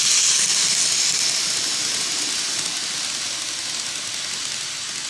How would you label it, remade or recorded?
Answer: recorded